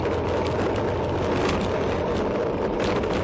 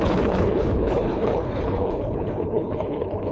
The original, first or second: first